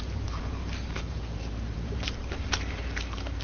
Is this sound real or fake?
fake